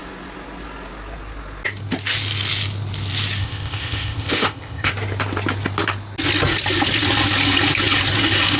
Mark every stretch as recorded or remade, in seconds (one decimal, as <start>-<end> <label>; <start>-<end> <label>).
0.0-3.4 recorded; 3.4-4.9 remade; 4.9-8.6 recorded